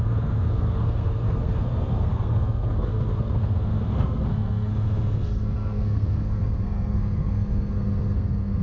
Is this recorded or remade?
remade